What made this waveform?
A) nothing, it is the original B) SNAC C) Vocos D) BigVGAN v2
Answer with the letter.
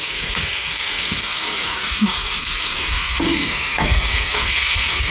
B